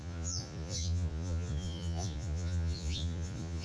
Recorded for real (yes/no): no